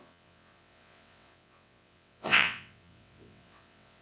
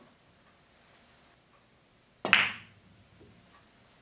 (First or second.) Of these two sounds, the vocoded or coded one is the first